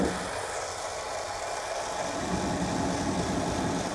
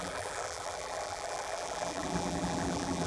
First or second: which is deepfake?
second